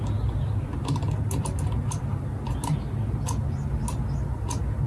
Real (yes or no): yes